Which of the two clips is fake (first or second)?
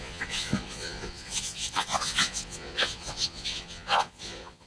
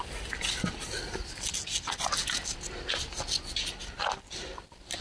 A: first